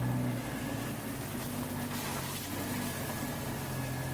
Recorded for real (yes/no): yes